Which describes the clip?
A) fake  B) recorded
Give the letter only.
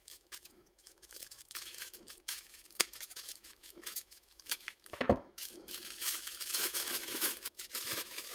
A